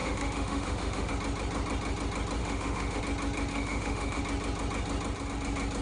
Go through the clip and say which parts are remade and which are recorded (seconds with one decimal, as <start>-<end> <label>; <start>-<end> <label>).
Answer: 0.0-1.1 remade; 1.1-2.4 recorded; 2.4-3.0 remade; 3.0-3.5 recorded; 3.5-4.2 remade; 4.2-5.8 recorded